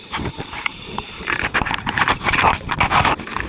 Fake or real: fake